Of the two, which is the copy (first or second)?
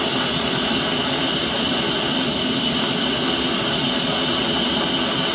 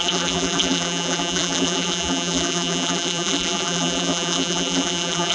second